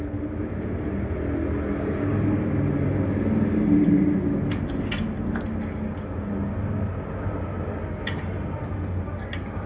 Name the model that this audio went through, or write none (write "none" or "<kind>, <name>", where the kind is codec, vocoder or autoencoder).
none